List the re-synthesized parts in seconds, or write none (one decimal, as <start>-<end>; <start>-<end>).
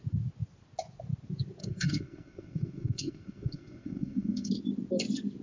1.6-4.5